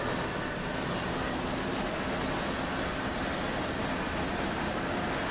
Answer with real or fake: real